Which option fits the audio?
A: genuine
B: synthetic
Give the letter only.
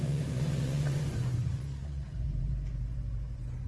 B